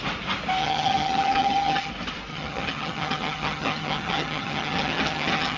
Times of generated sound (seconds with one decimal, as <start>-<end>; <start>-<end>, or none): 0.6-1.9; 2.3-5.6